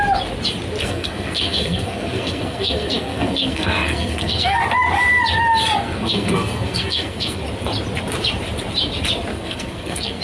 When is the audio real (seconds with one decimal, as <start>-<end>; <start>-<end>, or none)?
0.0-0.8; 4.6-5.8; 7.4-9.3